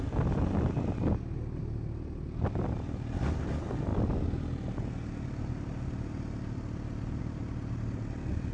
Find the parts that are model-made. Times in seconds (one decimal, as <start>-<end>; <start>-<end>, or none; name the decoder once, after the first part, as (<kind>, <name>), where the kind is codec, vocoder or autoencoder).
none